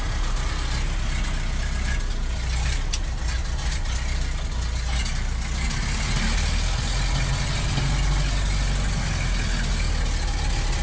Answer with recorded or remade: recorded